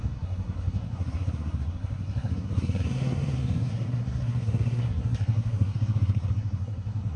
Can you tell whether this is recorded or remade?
remade